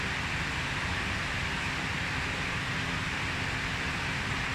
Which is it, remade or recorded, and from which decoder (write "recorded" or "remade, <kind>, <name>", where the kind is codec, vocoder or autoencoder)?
recorded